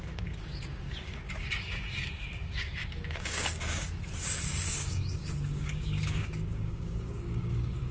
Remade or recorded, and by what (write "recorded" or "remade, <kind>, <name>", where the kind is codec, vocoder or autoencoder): remade, codec, DAC